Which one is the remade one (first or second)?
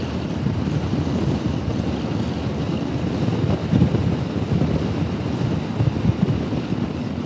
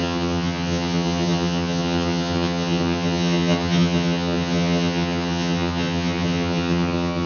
second